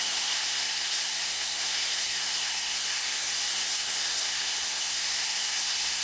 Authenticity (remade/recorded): remade